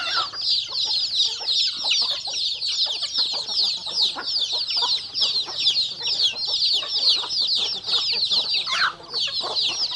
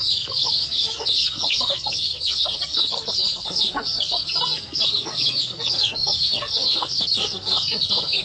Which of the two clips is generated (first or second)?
second